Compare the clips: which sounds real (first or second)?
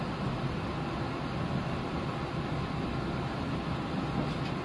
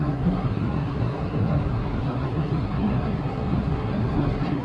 first